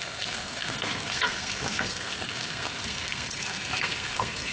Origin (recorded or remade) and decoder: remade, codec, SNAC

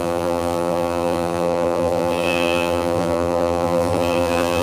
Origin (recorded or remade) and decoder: remade, vocoder, BigVGAN v2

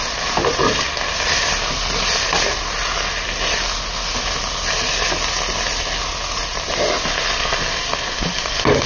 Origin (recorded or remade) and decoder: recorded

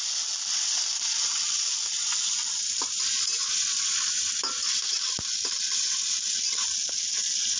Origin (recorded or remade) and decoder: recorded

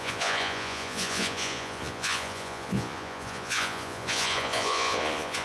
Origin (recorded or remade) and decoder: remade, vocoder, Vocos